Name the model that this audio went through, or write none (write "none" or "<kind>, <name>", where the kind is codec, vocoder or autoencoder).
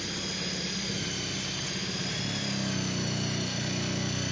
none